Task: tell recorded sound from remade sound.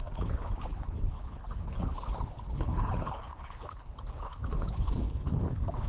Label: remade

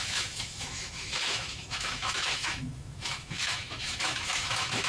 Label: remade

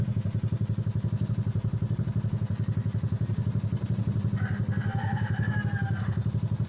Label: recorded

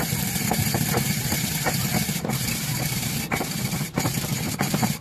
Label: remade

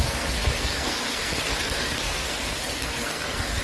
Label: remade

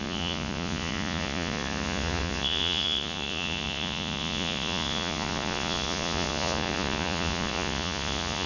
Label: remade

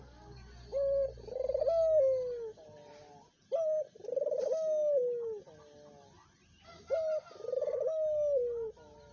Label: recorded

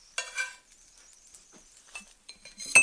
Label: recorded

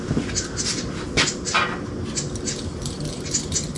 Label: recorded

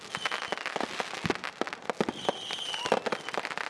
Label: recorded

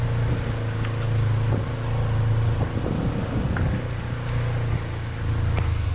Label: recorded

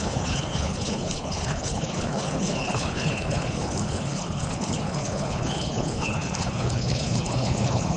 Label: remade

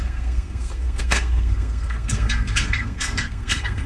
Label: remade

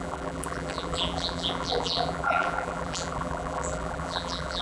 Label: remade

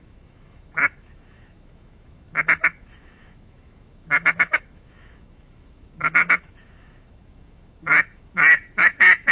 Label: remade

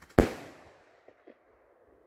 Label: recorded